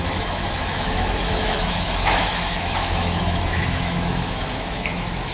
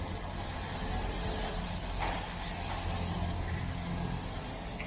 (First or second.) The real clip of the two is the second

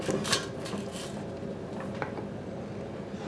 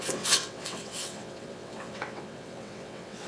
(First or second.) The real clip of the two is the first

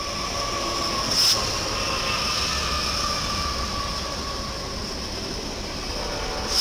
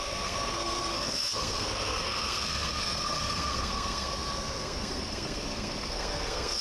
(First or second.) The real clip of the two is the first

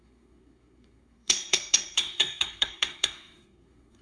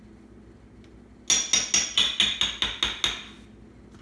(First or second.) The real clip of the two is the second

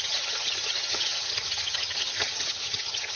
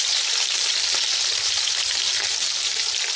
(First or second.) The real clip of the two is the second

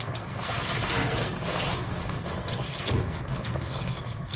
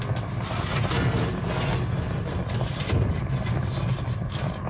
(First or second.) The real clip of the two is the second